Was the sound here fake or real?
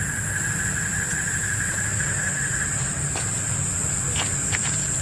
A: real